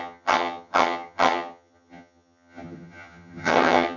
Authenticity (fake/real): fake